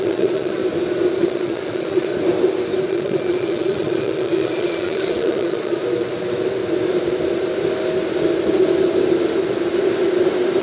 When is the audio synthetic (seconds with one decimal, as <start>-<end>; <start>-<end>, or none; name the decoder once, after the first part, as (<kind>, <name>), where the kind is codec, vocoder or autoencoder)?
0.0-0.6 (vocoder, Vocos); 1.2-2.1; 2.9-5.8